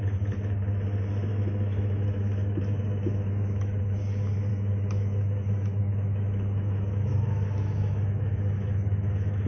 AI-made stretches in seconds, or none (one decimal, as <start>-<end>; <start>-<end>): 1.3-3.8; 4.5-9.5